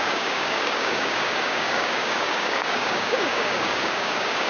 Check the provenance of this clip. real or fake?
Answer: fake